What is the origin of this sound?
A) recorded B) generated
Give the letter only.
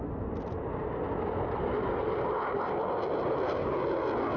A